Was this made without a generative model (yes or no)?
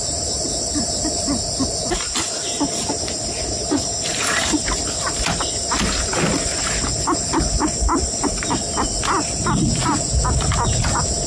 yes